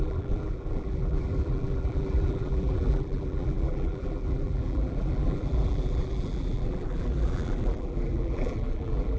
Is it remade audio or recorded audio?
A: remade